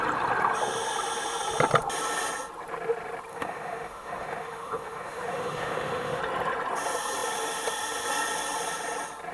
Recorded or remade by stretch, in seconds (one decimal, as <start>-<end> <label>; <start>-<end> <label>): 0.0-3.3 recorded; 3.3-6.2 remade; 6.2-9.3 recorded